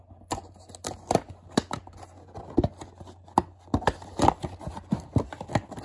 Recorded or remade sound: recorded